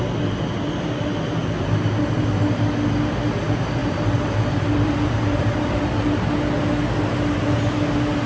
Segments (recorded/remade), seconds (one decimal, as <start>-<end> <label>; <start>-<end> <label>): 0.0-1.4 recorded; 1.4-2.2 remade; 2.2-3.8 recorded; 3.8-6.2 remade; 6.2-8.3 recorded